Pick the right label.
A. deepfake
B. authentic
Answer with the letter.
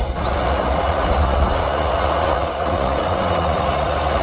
A